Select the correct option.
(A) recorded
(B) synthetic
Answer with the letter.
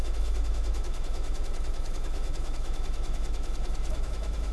B